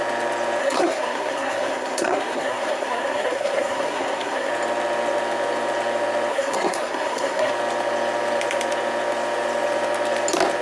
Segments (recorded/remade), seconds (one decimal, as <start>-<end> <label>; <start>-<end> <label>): 0.0-0.6 recorded; 0.6-4.5 remade; 4.5-6.3 recorded; 6.3-7.5 remade; 7.5-10.6 recorded